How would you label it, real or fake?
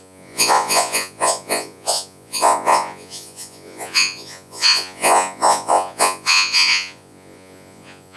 fake